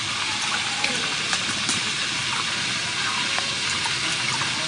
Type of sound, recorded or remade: recorded